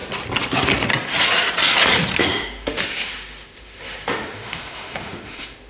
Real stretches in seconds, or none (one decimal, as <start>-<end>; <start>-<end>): 0.0-2.2